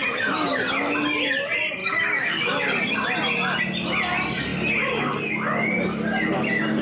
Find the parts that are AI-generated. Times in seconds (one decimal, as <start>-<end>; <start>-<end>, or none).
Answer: 1.8-2.6